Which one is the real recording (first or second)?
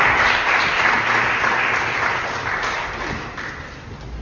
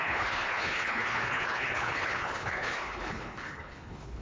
first